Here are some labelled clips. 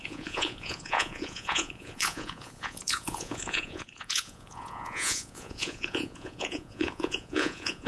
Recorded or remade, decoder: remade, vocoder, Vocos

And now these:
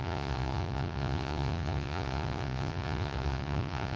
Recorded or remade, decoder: remade, vocoder, Vocos